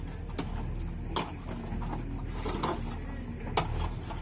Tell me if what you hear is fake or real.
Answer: real